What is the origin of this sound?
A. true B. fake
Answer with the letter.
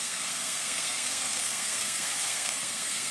B